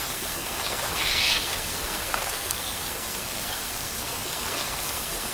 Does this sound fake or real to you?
fake